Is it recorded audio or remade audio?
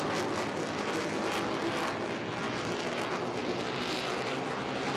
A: recorded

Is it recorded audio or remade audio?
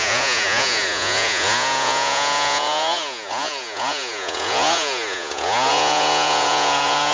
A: remade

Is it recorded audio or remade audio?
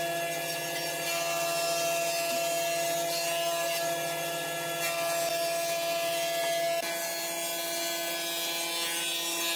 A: recorded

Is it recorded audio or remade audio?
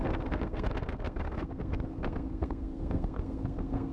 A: remade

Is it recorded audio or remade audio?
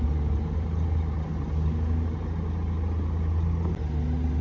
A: recorded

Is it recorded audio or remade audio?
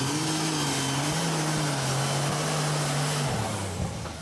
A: recorded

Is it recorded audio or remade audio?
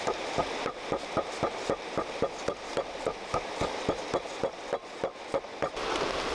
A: remade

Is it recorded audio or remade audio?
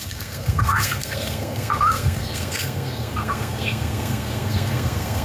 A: remade